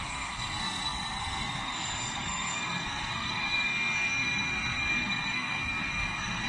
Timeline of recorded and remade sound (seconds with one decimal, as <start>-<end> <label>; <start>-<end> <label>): 0.0-6.5 remade